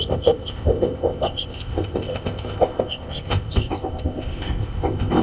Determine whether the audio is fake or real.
fake